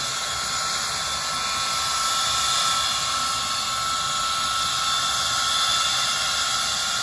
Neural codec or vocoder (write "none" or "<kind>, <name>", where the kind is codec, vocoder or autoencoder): none